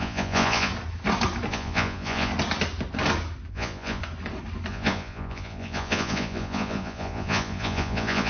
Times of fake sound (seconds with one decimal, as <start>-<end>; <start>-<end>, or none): 0.0-0.7; 1.5-2.3; 3.5-4.0; 4.7-8.3